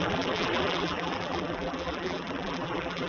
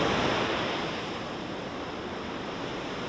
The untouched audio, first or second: second